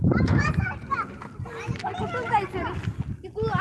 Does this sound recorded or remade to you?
recorded